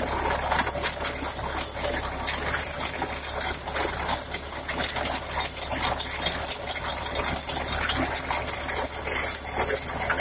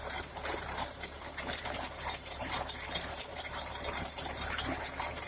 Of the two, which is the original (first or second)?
first